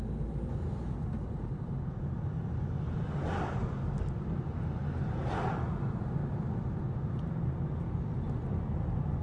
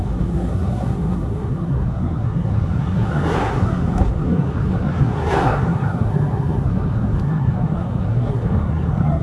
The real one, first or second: first